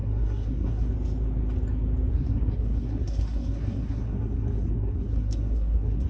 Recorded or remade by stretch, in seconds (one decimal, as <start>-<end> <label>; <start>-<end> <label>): 0.0-0.9 remade; 0.9-2.1 recorded; 2.1-6.1 remade